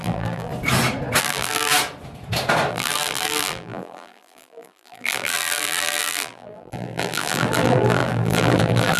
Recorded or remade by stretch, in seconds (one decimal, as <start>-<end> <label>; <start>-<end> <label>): 0.0-0.5 remade; 0.5-1.2 recorded; 1.2-1.7 remade; 1.7-2.7 recorded; 2.7-9.0 remade